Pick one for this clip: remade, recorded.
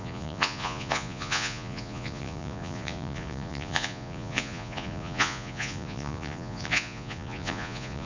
remade